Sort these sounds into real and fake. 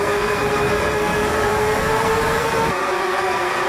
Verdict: fake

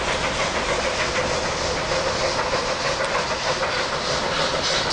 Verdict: real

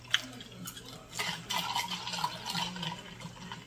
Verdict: real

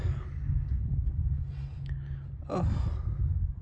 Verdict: real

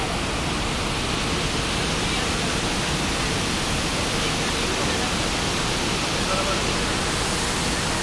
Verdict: real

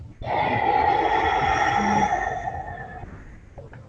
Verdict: real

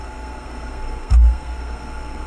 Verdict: fake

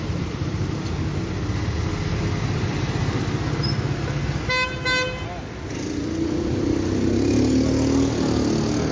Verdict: real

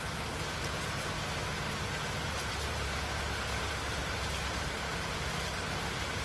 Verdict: real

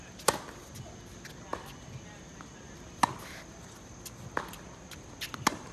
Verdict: real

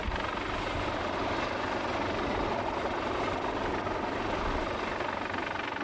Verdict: real